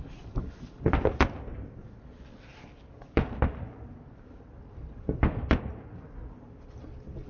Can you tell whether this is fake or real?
real